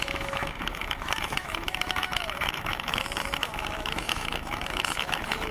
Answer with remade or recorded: remade